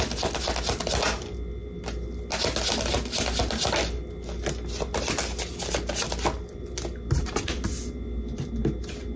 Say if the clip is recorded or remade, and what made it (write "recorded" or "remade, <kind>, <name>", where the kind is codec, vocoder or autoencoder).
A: recorded